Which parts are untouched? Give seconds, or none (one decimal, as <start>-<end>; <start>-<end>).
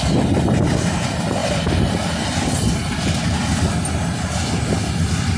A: 0.0-5.4